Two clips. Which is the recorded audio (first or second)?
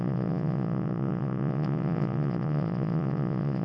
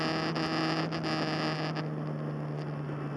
second